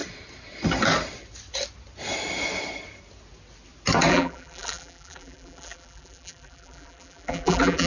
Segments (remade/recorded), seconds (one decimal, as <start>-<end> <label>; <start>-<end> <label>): 0.0-4.1 recorded; 4.1-7.9 remade